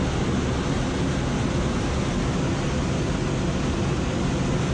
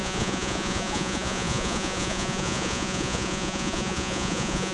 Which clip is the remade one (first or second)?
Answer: second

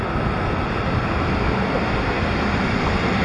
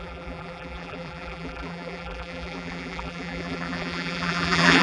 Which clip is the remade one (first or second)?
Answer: second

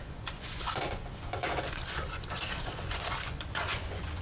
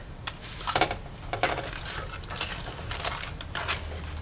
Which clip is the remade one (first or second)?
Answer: first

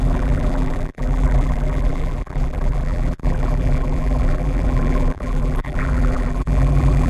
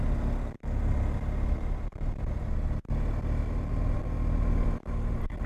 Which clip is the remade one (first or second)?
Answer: first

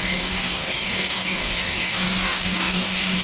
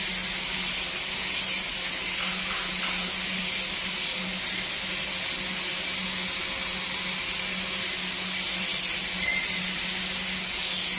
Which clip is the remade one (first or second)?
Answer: first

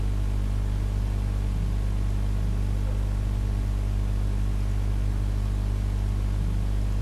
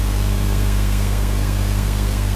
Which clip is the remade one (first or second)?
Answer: second